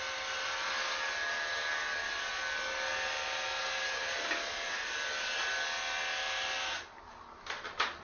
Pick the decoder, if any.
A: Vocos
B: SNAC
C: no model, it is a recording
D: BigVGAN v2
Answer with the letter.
C